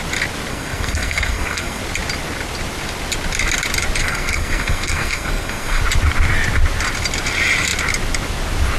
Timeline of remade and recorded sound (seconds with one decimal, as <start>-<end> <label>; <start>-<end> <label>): 0.0-0.5 recorded; 0.5-1.8 remade; 1.8-4.0 recorded; 4.0-5.8 remade; 5.8-8.8 recorded